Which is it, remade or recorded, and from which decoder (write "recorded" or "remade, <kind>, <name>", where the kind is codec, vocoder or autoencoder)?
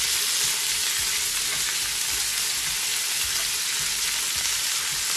recorded